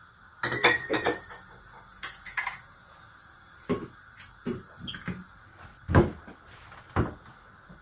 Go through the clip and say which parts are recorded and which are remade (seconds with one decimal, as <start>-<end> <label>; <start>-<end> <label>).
0.0-1.9 recorded; 1.9-3.2 remade; 3.2-7.8 recorded